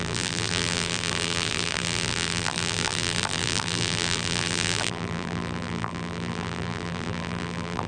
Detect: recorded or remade remade